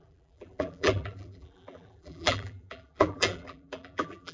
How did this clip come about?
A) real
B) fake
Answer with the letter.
B